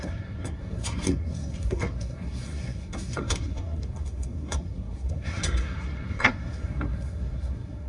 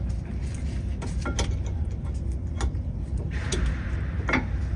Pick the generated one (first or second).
first